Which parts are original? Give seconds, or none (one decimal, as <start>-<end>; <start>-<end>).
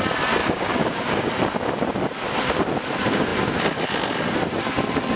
0.0-0.4; 1.3-5.2